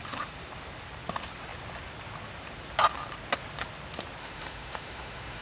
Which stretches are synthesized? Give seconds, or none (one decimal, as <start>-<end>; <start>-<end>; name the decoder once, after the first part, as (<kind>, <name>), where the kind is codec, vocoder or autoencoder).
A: 4.2-5.4 (autoencoder, DAC-VAE)